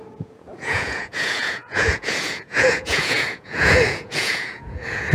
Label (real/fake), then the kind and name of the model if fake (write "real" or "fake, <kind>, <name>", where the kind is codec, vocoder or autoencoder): fake, vocoder, Vocos